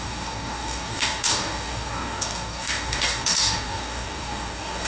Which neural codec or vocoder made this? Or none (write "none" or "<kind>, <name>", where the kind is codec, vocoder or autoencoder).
codec, DAC